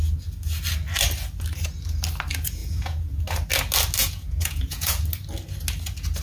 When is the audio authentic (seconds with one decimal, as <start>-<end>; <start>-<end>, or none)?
0.0-2.6; 3.2-4.0; 5.0-6.2